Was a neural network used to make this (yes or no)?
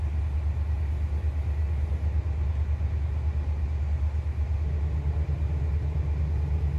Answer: no